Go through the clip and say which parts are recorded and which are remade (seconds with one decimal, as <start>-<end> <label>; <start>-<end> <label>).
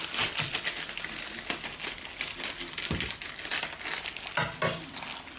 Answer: 0.0-5.4 recorded